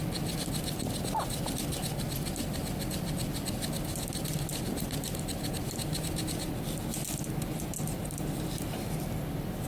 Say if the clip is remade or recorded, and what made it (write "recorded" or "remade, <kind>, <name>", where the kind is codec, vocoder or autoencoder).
recorded